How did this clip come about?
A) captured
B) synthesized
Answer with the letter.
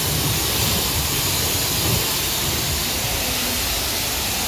A